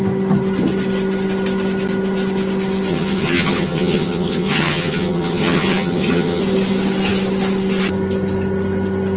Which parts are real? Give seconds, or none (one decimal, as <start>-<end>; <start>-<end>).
0.0-2.9; 6.4-9.2